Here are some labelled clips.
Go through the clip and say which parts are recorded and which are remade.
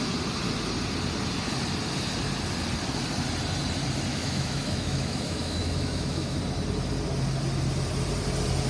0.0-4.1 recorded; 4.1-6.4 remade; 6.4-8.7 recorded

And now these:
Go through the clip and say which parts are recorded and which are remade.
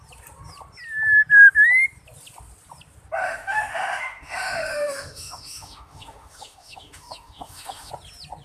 0.0-3.2 recorded; 3.2-7.9 remade; 7.9-8.4 recorded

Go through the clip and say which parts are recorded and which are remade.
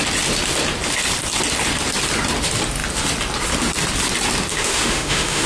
0.0-4.5 recorded; 4.5-5.5 remade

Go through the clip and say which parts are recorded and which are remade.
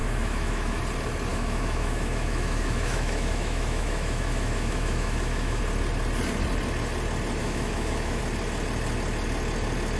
0.0-0.8 remade; 0.8-1.3 recorded; 1.3-5.6 remade; 5.6-7.4 recorded; 7.4-8.2 remade; 8.2-10.0 recorded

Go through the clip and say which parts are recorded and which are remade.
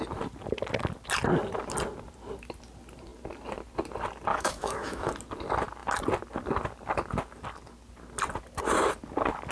0.0-4.3 recorded; 4.3-5.1 remade; 5.1-9.5 recorded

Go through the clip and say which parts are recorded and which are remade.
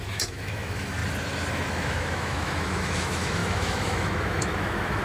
0.0-1.0 remade; 1.0-1.5 recorded; 1.5-5.0 remade